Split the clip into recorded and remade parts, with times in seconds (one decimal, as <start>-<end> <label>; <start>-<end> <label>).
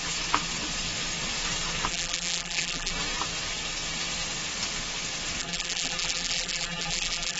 0.0-1.9 recorded; 1.9-2.9 remade; 2.9-5.4 recorded; 5.4-7.4 remade